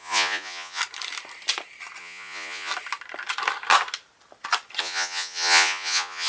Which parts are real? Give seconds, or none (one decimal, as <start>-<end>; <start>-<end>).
0.8-2.0; 2.7-4.8

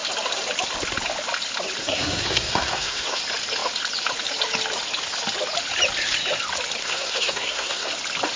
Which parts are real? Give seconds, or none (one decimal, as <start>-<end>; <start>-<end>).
0.0-1.8; 3.2-6.8; 7.9-8.4

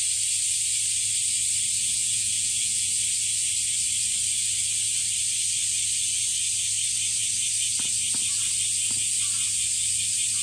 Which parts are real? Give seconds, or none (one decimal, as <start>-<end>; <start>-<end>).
0.0-1.8; 2.9-10.4

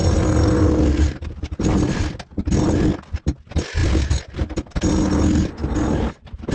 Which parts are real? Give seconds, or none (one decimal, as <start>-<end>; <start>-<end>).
0.0-6.5